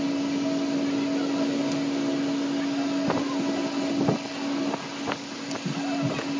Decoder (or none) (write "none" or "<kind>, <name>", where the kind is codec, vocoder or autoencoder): none